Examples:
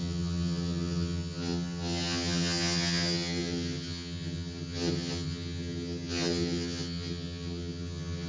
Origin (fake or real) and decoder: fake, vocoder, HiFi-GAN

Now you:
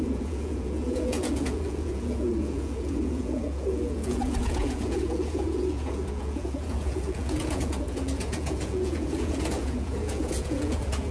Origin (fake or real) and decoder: fake, vocoder, Vocos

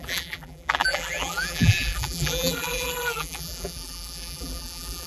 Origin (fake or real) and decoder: fake, vocoder, BigVGAN v2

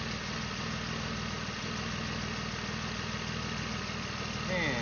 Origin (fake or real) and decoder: real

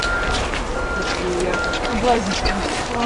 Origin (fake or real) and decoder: real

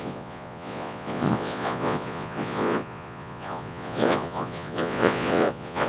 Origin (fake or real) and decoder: fake, vocoder, Vocos